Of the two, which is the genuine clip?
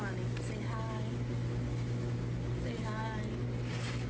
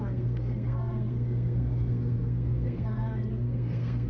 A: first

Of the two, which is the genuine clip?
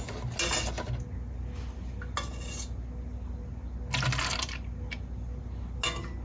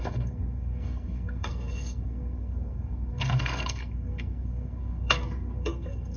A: first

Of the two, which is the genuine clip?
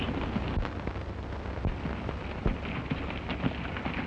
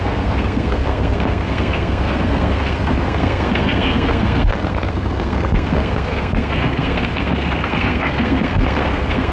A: first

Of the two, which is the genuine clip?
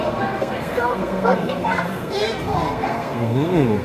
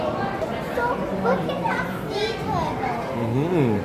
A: second